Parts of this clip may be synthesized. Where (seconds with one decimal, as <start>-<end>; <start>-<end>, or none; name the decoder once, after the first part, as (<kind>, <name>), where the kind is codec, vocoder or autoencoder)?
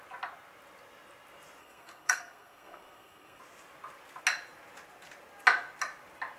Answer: 1.6-3.4 (codec, SNAC)